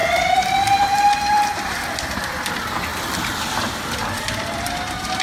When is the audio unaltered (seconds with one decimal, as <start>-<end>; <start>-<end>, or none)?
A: 2.3-2.9; 4.2-5.2